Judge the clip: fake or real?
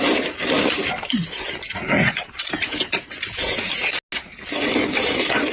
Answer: real